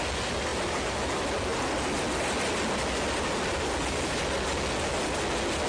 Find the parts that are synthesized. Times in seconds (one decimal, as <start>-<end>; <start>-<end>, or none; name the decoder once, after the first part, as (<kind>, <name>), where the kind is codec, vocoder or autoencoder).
none